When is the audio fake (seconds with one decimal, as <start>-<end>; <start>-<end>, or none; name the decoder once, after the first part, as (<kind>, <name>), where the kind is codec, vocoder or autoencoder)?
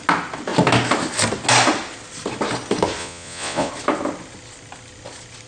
3.0-3.7 (vocoder, Vocos)